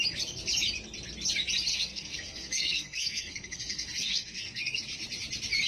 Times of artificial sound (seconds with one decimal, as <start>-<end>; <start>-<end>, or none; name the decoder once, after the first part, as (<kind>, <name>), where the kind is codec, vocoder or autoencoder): 1.7-4.8 (codec, SNAC)